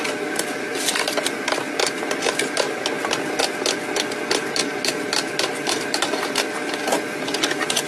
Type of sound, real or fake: real